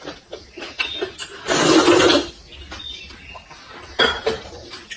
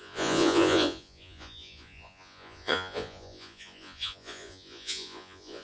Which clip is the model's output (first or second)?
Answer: second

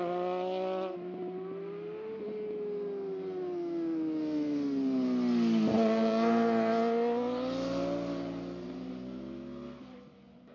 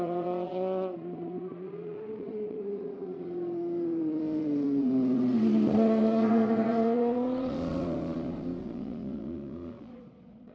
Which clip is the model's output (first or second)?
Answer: second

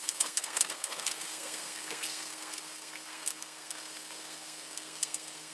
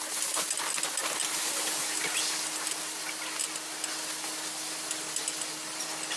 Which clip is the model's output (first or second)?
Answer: first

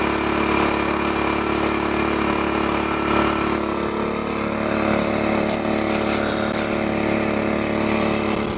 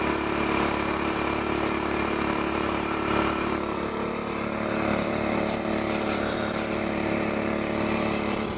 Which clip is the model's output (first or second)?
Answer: second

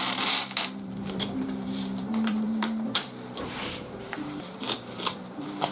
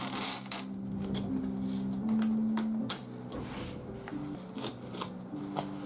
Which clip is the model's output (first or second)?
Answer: first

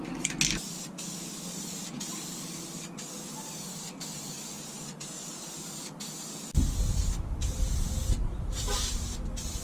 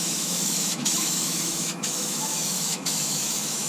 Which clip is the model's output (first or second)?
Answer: second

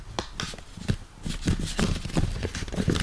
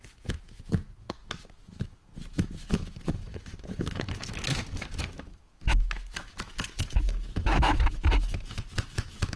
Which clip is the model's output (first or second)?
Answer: second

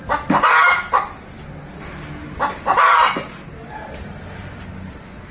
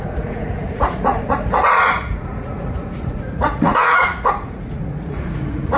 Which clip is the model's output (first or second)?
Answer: second